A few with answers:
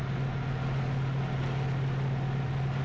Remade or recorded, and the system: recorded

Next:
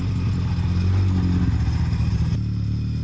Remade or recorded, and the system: recorded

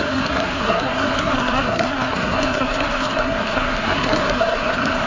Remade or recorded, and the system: remade, codec, SNAC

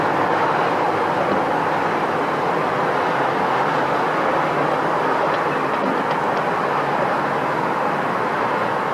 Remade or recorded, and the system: recorded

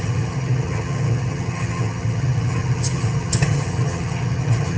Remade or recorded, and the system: remade, vocoder, HiFi-GAN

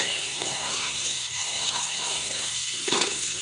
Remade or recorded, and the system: remade, codec, SNAC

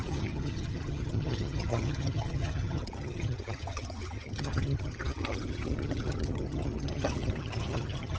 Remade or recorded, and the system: remade, vocoder, HiFi-GAN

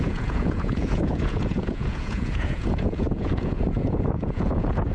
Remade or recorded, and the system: remade, vocoder, Vocos